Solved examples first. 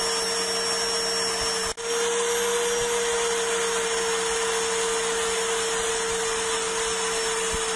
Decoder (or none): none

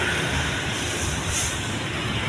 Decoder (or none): none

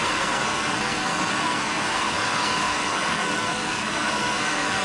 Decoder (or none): codec, SNAC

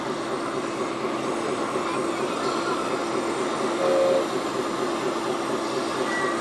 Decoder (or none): none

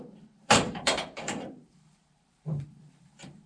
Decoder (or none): vocoder, BigVGAN v2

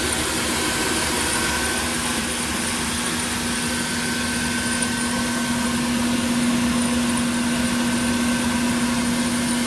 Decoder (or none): none